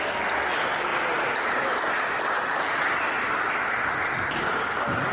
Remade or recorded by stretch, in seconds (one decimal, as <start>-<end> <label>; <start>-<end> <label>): 0.0-5.1 recorded